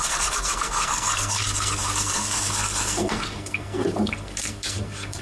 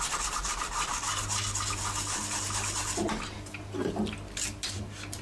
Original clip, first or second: second